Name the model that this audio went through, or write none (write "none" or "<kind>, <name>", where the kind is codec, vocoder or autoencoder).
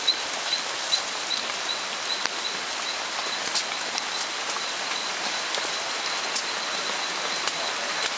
none